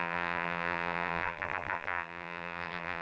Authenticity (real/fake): fake